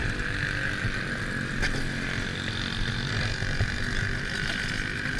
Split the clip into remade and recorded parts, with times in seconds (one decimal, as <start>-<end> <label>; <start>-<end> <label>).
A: 0.0-5.2 recorded